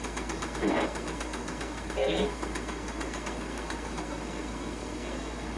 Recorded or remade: remade